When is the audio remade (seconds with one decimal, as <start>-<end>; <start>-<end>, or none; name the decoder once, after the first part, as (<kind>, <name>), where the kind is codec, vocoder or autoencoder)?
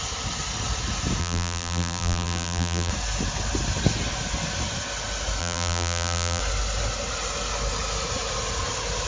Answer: 1.2-2.9 (vocoder, BigVGAN v2); 5.4-6.4